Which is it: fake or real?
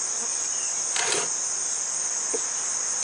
real